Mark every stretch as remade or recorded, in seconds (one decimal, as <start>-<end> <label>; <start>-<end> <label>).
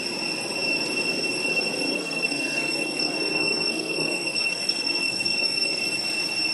0.0-1.9 recorded; 1.9-5.8 remade; 5.8-6.5 recorded